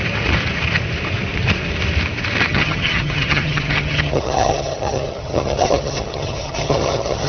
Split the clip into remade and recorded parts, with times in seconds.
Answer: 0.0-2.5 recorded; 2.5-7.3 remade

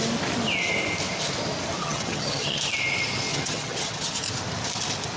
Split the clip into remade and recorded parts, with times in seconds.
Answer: 0.0-1.8 recorded; 1.8-2.6 remade; 2.6-3.3 recorded; 3.3-4.2 remade; 4.2-5.2 recorded

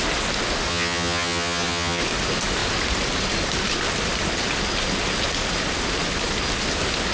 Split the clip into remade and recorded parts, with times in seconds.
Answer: 0.0-0.7 recorded; 0.7-2.0 remade; 2.0-7.1 recorded